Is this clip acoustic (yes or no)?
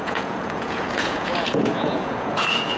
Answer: no